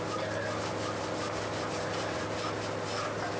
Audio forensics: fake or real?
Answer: real